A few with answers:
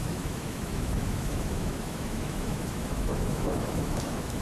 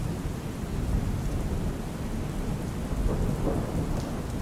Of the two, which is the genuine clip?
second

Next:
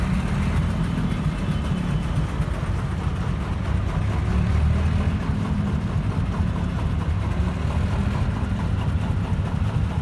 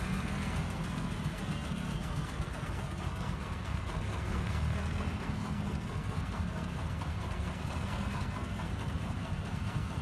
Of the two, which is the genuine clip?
first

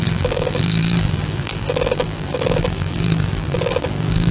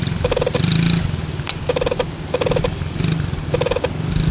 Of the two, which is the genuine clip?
second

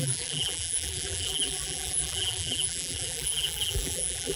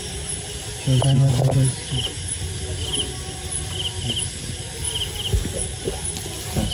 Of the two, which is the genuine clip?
second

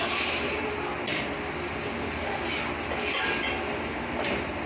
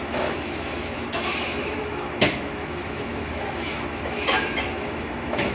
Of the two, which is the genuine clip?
first